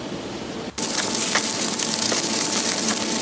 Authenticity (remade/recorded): recorded